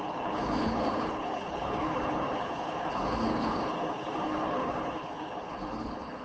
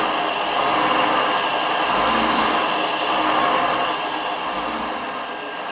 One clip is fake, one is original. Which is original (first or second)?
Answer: second